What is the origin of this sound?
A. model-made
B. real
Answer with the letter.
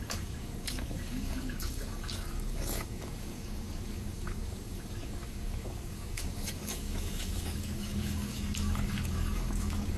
A